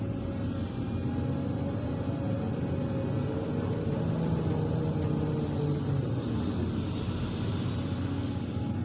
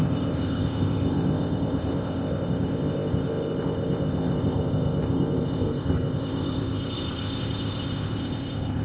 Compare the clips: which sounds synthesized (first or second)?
second